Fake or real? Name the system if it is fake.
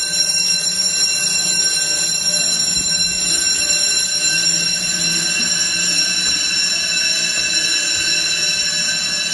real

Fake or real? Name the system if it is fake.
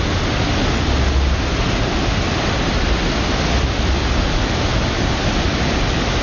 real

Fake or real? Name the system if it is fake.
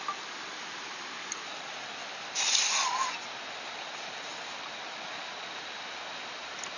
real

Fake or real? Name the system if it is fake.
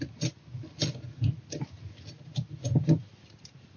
real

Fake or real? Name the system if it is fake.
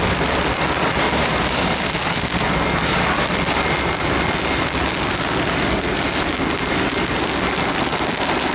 real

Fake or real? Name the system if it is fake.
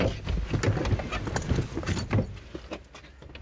real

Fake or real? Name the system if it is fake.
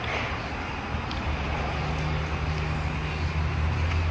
real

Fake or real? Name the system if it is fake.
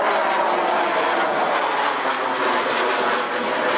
real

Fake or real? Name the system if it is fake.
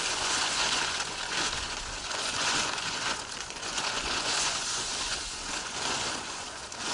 fake, vocoder, Vocos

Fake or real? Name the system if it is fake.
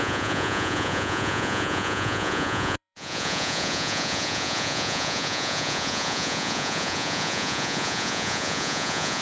fake, vocoder, Vocos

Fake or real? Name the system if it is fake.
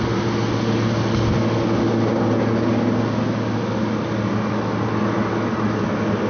real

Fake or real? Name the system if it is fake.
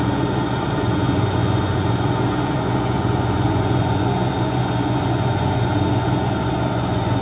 fake, vocoder, Vocos